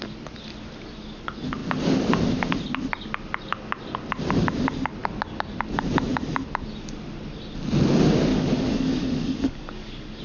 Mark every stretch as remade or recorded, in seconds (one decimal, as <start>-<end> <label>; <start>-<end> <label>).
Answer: 0.0-8.3 recorded; 8.3-10.2 remade